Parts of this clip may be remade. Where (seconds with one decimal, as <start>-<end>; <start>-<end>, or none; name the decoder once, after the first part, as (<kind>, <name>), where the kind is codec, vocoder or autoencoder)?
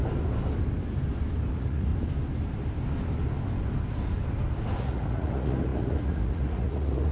1.5-1.9 (vocoder, Vocos); 4.8-7.1